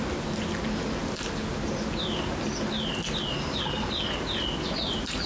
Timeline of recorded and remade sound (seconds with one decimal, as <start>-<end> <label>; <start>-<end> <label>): 0.0-5.3 recorded